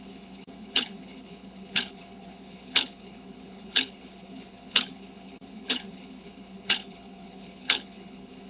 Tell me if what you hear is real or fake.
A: fake